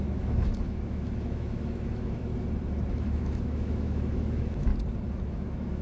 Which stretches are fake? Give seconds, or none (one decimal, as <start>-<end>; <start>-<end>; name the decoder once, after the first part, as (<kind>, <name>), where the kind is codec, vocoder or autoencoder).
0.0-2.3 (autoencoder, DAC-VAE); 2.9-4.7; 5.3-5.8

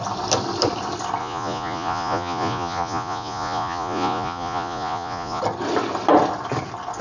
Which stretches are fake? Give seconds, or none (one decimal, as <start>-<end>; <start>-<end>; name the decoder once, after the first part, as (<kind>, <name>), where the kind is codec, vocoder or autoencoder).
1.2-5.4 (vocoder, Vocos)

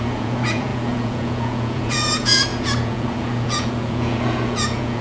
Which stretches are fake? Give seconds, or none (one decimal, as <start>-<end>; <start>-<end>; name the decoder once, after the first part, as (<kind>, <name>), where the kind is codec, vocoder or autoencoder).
0.0-5.0 (vocoder, Vocos)